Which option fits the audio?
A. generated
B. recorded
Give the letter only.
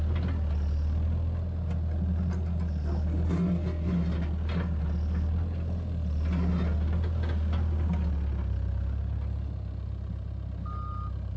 B